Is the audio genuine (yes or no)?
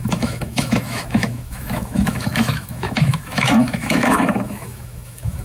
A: no